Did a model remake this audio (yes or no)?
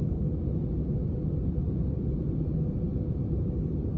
no